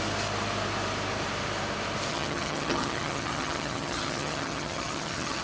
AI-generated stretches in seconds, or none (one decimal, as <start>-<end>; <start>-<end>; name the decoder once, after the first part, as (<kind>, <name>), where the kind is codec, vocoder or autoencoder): 2.1-5.4 (vocoder, HiFi-GAN)